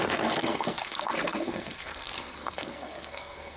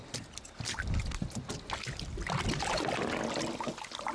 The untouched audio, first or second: second